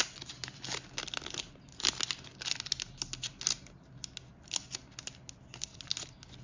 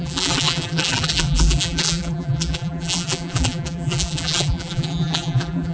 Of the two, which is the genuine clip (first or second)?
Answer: first